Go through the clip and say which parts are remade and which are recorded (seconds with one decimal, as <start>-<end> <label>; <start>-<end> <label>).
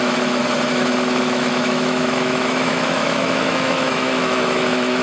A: 0.0-0.4 remade; 0.4-1.2 recorded; 1.2-5.0 remade